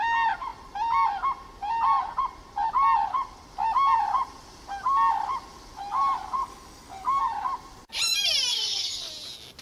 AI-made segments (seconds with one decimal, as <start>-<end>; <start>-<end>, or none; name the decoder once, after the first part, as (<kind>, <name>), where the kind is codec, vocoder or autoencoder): 6.4-7.2 (codec, DAC); 8.5-9.1